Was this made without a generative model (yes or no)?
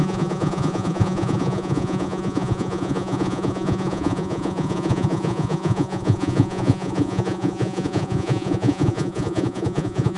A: no